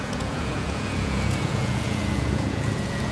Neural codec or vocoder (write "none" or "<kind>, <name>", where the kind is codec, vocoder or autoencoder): vocoder, Vocos